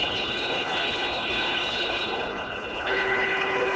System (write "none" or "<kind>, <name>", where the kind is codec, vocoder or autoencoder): codec, HILCodec